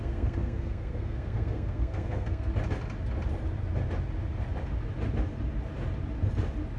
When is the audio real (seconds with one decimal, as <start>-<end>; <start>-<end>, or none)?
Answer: 2.5-6.8